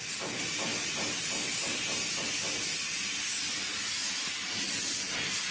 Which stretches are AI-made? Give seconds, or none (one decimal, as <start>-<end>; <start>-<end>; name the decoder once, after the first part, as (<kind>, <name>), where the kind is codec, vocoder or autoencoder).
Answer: none